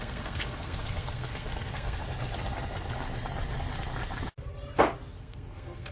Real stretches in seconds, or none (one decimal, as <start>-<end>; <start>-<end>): 2.0-5.1